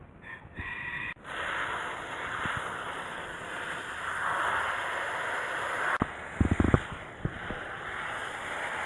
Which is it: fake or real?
real